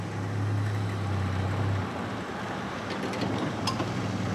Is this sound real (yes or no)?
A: yes